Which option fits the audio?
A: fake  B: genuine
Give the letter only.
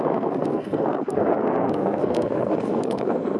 A